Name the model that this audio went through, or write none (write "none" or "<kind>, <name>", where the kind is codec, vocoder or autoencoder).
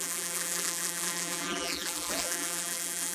vocoder, BigVGAN v2